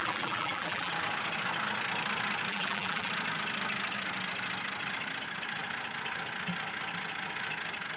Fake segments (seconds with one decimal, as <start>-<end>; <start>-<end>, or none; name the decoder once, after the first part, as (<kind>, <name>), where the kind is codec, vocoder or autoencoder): 0.0-0.9 (vocoder, BigVGAN v2); 2.5-3.1